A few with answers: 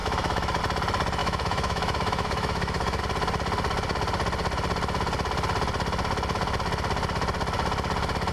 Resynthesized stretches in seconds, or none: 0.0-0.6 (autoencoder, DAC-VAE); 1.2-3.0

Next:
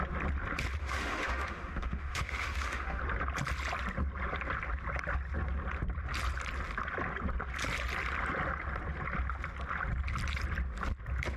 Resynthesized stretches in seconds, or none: 0.8-3.0 (autoencoder, DAC-VAE)

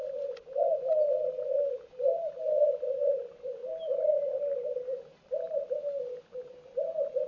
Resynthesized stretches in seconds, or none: none

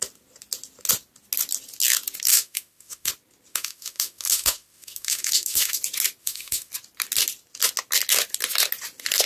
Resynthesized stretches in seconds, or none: 2.3-3.1 (autoencoder, DAC-VAE); 3.5-5.8; 6.2-6.7